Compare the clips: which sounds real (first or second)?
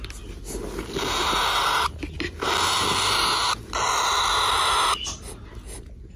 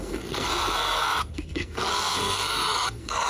first